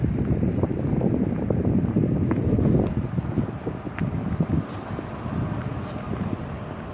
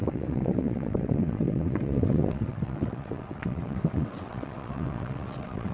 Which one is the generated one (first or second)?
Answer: second